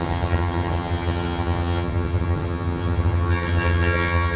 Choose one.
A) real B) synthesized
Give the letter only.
B